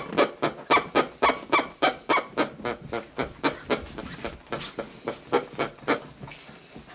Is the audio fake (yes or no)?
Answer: no